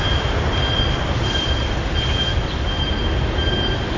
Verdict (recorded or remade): recorded